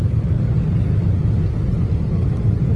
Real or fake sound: real